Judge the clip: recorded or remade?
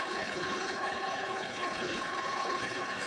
remade